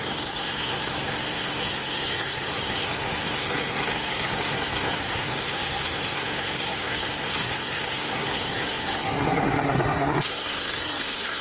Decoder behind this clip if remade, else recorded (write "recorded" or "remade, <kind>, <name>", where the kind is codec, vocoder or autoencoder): remade, codec, SNAC